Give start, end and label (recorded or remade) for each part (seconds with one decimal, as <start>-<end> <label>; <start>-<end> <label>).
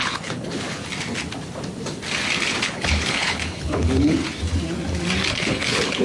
0.0-0.8 remade; 0.8-2.6 recorded; 2.6-4.2 remade; 4.2-5.3 recorded; 5.3-6.0 remade